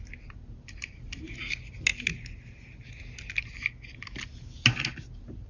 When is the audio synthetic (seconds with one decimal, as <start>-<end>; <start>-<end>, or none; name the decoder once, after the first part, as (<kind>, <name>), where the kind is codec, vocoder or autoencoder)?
none